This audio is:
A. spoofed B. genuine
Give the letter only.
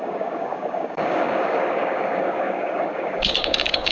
A